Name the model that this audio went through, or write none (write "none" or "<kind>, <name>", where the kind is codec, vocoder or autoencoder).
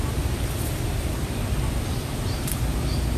none